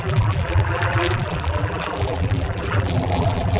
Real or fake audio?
fake